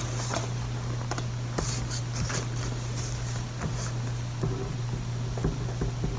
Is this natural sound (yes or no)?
yes